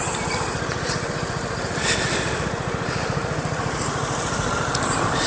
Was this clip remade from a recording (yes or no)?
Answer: yes